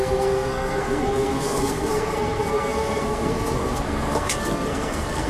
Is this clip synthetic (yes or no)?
yes